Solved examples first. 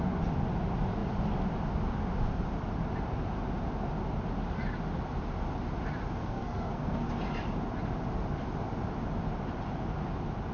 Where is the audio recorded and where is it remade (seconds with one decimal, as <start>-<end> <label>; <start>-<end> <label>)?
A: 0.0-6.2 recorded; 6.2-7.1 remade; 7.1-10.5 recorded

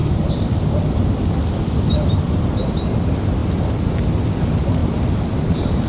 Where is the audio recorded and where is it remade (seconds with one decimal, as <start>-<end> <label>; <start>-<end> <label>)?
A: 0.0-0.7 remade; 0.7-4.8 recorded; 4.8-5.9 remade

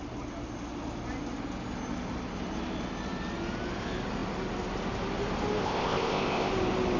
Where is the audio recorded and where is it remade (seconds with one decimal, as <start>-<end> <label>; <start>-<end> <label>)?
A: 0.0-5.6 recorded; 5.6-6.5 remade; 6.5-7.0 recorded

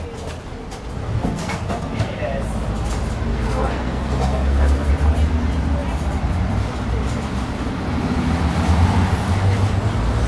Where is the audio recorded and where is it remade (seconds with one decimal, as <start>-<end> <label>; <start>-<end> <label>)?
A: 0.0-1.0 recorded; 1.0-2.2 remade; 2.2-3.3 recorded; 3.3-4.9 remade; 4.9-10.3 recorded

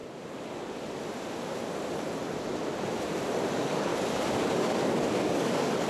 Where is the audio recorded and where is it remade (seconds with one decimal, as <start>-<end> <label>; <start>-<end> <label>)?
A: 0.0-3.5 recorded; 3.5-3.9 remade; 3.9-4.5 recorded; 4.5-5.9 remade

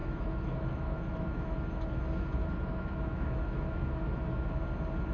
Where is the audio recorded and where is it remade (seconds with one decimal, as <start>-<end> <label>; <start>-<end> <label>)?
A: 0.0-2.0 remade; 2.0-2.4 recorded; 2.4-4.6 remade; 4.6-5.1 recorded

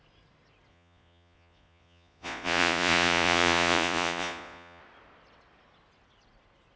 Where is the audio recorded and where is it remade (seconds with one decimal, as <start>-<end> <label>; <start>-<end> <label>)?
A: 0.0-0.7 recorded; 0.7-4.8 remade; 4.8-6.8 recorded

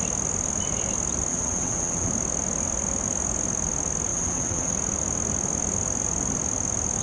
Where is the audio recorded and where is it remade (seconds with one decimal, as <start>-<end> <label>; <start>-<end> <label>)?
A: 0.0-1.3 recorded; 1.3-2.1 remade; 2.1-4.1 recorded; 4.1-4.7 remade; 4.7-7.0 recorded